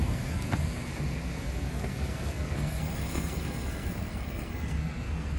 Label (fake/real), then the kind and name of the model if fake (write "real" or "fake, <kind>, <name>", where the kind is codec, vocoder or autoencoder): fake, codec, SNAC